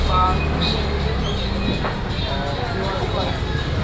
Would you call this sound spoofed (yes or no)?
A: no